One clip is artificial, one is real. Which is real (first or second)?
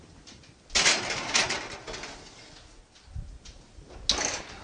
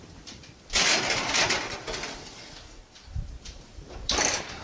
first